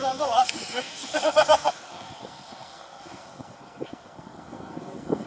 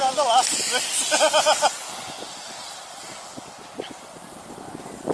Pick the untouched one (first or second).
second